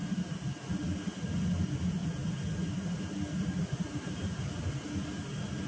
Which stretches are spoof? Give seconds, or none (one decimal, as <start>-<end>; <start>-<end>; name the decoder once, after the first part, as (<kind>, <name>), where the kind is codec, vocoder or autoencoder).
none